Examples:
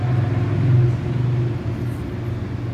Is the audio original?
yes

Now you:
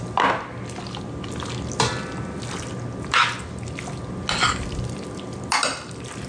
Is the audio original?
yes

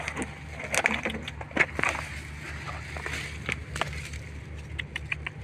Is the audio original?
yes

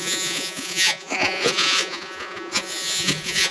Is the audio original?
no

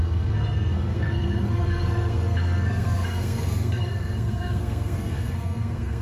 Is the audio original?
no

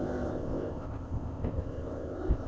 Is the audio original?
no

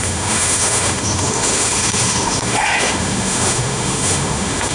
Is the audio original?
no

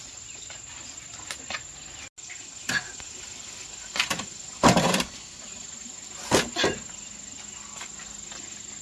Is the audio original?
yes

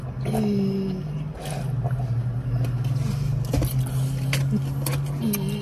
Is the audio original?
yes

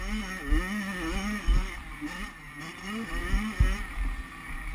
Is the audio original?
yes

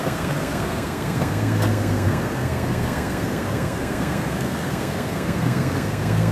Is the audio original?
no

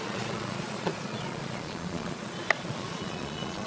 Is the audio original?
no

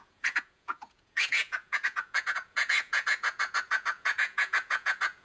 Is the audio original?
no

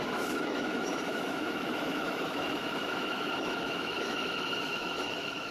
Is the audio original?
no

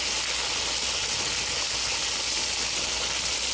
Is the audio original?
yes